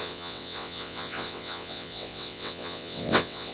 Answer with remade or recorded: remade